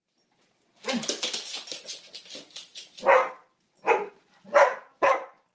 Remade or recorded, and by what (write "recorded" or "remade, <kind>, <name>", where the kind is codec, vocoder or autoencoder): recorded